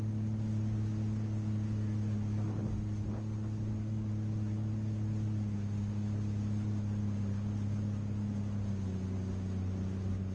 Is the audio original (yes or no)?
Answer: yes